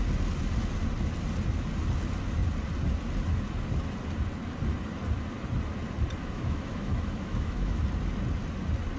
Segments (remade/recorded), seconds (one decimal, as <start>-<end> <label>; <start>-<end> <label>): 0.0-6.2 recorded; 6.2-7.8 remade; 7.8-9.0 recorded